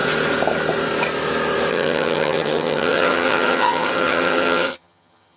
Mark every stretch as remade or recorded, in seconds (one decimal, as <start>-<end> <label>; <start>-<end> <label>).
0.0-1.7 recorded; 1.7-5.4 remade